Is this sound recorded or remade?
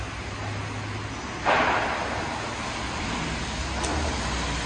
recorded